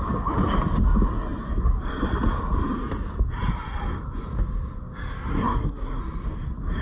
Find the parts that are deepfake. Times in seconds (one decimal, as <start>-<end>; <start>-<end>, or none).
5.3-6.0